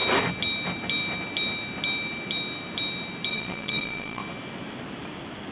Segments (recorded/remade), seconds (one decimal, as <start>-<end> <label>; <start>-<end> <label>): 0.0-3.3 recorded; 3.3-4.2 remade; 4.2-5.5 recorded